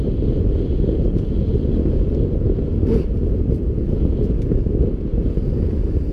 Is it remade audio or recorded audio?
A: recorded